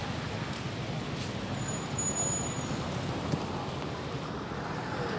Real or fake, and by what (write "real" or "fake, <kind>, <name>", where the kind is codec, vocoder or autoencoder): real